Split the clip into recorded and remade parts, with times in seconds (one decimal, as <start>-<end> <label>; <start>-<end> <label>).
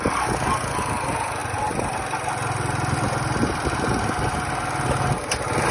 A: 0.0-5.7 recorded